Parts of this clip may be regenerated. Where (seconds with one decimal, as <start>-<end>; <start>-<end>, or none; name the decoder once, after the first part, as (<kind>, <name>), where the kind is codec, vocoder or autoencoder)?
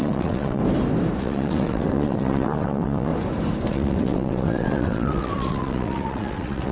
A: 0.0-0.6 (vocoder, WaveNeXt); 1.2-3.1; 3.7-6.7